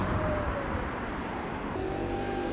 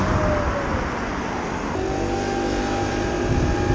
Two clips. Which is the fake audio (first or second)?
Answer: first